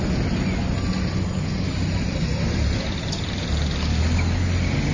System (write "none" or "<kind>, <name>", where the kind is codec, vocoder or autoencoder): none